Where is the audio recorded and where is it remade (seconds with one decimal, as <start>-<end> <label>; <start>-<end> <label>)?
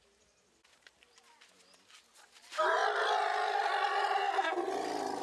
0.0-5.2 recorded